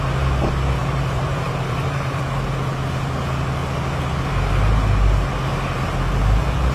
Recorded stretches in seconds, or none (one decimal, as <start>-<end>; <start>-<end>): 0.0-0.8; 2.2-6.7